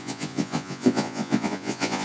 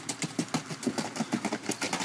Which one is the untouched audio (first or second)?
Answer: second